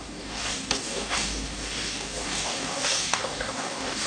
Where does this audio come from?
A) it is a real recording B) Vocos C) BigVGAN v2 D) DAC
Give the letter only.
D